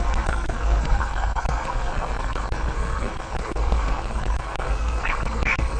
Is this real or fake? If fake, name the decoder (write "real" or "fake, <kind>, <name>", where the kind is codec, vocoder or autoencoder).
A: fake, codec, SNAC